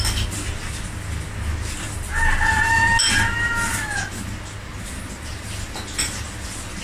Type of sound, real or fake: real